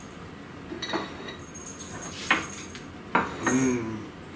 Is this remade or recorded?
recorded